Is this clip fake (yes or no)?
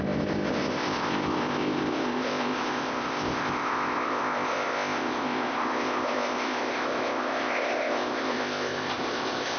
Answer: yes